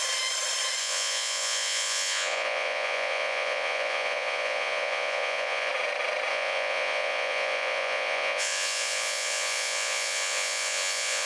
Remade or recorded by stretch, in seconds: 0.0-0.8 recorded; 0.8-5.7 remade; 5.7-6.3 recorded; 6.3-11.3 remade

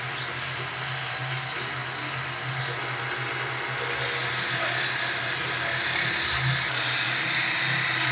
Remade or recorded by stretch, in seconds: 0.0-8.1 recorded

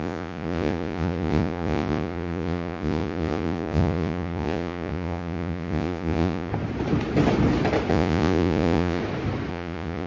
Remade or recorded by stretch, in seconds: 0.0-6.5 remade; 6.5-7.9 recorded; 7.9-9.0 remade; 9.0-9.5 recorded; 9.5-10.1 remade

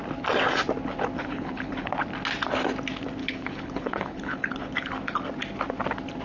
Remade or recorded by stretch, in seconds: 0.0-1.2 recorded; 1.2-1.9 remade; 1.9-3.2 recorded; 3.2-4.9 remade; 4.9-6.2 recorded

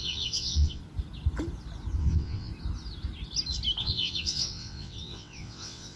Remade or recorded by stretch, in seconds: 0.0-0.8 remade; 0.8-2.0 recorded; 2.0-2.5 remade; 2.5-3.8 recorded; 3.8-6.0 remade

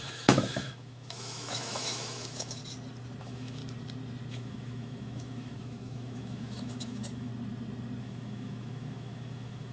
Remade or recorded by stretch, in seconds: 0.0-2.6 remade; 2.6-3.2 recorded; 3.2-3.6 remade; 3.6-4.3 recorded; 4.3-7.3 remade; 7.3-8.0 recorded; 8.0-9.7 remade

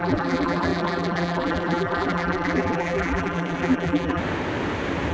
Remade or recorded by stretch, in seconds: 0.0-4.2 remade; 4.2-5.1 recorded